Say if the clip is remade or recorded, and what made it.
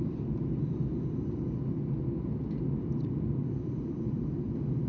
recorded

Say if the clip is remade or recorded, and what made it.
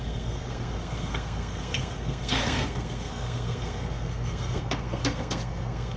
remade, codec, SNAC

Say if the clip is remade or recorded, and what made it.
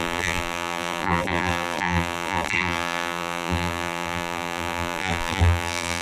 remade, vocoder, BigVGAN v2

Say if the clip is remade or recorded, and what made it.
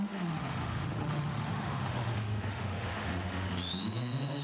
remade, autoencoder, DAC-VAE